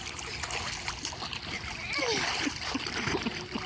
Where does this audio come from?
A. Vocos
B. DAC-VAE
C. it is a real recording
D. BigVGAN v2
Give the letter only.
C